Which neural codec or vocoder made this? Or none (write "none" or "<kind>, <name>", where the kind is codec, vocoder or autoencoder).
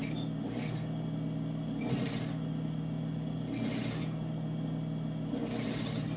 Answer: none